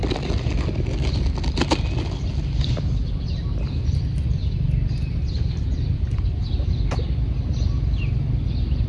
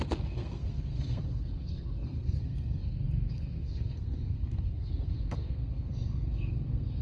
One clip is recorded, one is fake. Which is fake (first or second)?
second